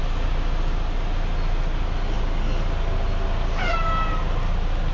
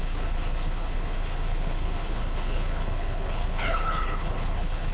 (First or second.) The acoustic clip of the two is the first